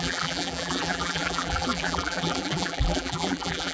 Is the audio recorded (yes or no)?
no